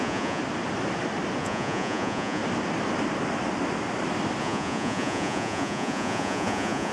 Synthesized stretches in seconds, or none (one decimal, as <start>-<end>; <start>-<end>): 0.0-0.4; 1.4-2.4; 4.4-6.9